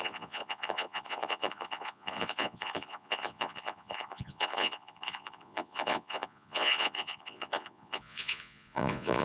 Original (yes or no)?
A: no